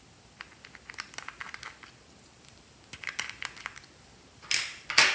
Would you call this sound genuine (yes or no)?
yes